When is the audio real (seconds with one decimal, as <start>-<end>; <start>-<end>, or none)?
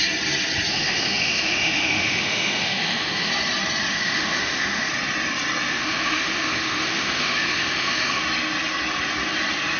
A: 0.0-0.7; 3.3-3.9; 4.9-5.7; 8.2-9.8